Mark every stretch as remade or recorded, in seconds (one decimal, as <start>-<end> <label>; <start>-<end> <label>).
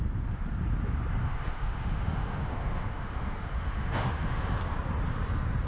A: 0.0-1.2 recorded; 1.2-4.6 remade; 4.6-5.7 recorded